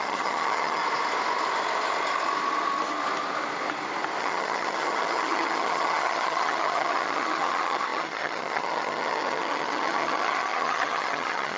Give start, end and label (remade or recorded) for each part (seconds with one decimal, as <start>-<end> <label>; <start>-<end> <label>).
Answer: 0.0-0.8 remade; 0.8-4.2 recorded; 4.2-11.6 remade